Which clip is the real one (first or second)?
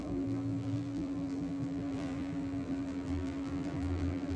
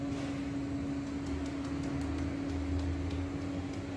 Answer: second